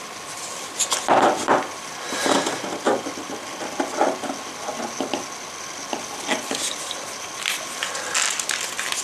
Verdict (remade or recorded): recorded